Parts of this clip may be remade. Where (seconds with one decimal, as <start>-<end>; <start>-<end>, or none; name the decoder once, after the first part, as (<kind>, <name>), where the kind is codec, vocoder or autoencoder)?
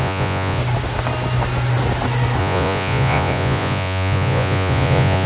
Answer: 0.0-0.6 (vocoder, Vocos); 2.4-5.3